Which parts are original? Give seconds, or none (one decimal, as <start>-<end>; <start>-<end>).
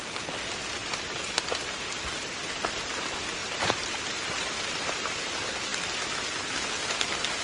0.0-0.8; 2.5-3.4; 5.3-7.4